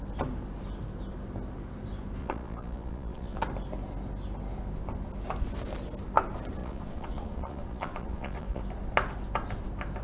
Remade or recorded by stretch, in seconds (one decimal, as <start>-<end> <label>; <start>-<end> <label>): 0.0-2.2 recorded; 2.2-3.4 remade; 3.4-6.6 recorded; 6.6-8.6 remade; 8.6-10.0 recorded